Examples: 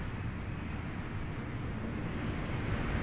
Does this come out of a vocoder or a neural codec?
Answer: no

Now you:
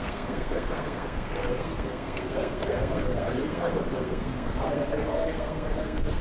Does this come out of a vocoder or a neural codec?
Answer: yes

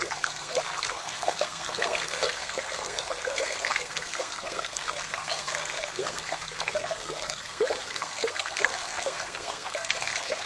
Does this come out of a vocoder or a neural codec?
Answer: yes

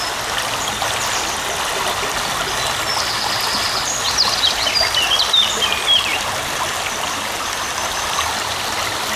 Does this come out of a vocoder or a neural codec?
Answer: no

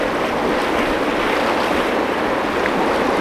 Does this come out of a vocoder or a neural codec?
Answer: no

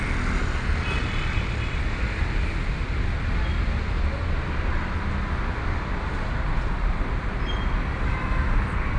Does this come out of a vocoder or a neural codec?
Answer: no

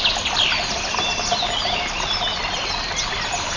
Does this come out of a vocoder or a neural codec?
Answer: no